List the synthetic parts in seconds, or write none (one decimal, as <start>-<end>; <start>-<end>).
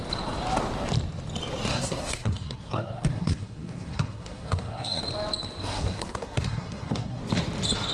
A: 1.7-5.0; 5.7-7.2